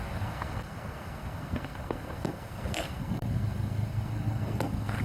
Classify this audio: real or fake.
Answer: fake